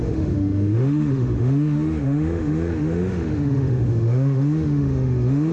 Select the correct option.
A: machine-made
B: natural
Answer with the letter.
A